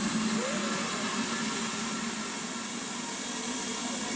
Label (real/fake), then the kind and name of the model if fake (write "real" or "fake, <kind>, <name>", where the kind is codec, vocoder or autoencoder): real